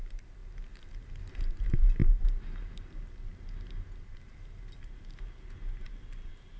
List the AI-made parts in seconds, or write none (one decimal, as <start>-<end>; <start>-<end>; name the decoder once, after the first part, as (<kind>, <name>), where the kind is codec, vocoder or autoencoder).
none